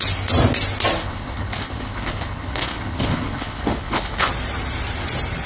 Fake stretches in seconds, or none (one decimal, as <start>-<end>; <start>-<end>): 1.0-4.3